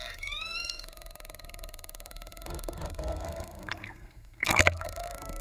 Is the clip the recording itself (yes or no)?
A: no